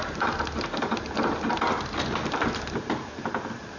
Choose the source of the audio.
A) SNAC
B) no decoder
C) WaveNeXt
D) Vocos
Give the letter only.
B